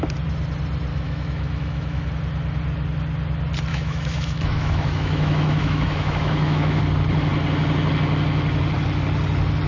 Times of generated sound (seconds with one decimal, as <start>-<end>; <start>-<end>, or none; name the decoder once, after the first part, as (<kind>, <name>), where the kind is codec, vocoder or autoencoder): 0.9-2.1 (autoencoder, DAC-VAE); 3.7-6.8